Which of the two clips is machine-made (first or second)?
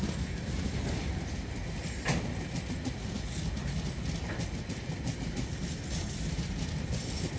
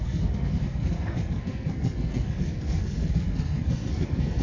second